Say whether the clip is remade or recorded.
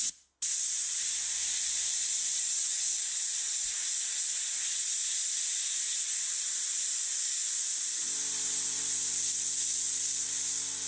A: recorded